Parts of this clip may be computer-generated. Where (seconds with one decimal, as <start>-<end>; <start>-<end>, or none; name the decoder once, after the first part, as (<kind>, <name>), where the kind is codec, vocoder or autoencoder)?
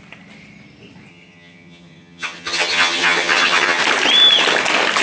1.1-3.8 (vocoder, HiFi-GAN)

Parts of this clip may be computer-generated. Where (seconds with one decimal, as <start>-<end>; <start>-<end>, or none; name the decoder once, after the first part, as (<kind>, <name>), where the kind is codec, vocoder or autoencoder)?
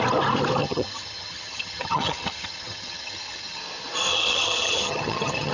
0.6-3.6 (vocoder, HiFi-GAN); 4.1-5.5